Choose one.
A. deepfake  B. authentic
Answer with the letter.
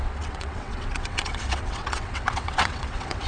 A